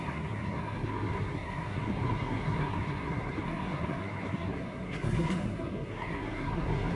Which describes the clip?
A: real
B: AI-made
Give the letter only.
B